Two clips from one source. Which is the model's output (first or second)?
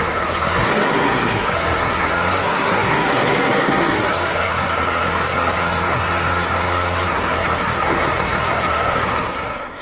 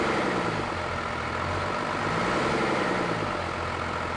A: first